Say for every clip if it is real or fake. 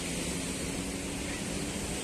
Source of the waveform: real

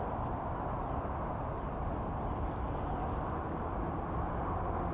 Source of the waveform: real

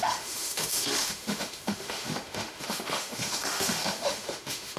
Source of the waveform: fake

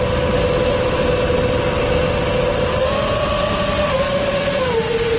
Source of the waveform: real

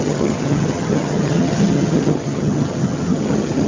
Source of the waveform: fake